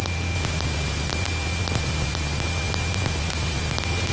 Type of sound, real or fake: real